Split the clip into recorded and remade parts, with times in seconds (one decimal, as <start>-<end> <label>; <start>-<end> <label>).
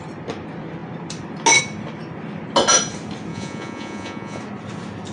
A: 0.0-3.3 recorded; 3.3-4.4 remade; 4.4-5.1 recorded